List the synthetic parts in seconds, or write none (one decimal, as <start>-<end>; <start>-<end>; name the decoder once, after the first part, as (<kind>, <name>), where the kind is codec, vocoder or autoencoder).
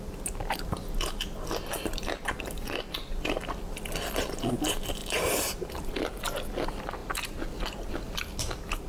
none